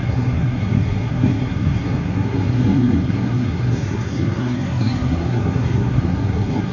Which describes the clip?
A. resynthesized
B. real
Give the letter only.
A